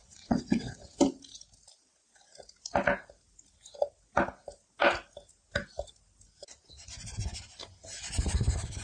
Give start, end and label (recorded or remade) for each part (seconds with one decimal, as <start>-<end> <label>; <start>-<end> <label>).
0.0-1.0 remade; 1.0-8.8 recorded